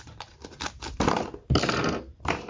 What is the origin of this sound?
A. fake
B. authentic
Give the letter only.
B